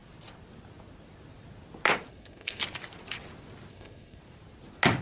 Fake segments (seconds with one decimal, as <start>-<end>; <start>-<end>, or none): 2.1-2.6; 3.7-4.2